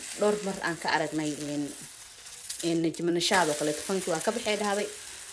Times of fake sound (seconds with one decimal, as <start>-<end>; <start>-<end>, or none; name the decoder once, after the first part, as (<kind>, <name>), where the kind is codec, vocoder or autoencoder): 0.8-3.1 (vocoder, WaveNeXt); 3.8-4.8